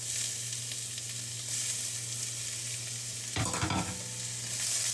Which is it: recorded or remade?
recorded